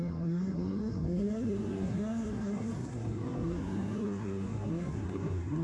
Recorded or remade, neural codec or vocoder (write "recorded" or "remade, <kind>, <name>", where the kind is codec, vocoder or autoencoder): remade, codec, SNAC